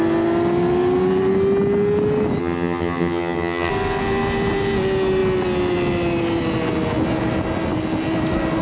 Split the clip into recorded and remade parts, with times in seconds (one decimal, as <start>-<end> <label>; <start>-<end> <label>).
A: 0.0-2.4 recorded; 2.4-3.7 remade; 3.7-8.6 recorded